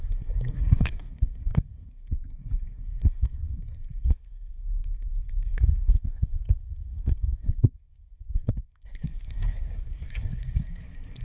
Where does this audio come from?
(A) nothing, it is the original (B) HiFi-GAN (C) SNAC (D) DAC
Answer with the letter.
C